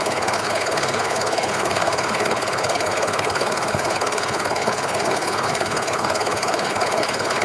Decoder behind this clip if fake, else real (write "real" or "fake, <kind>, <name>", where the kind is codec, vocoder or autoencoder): fake, codec, HILCodec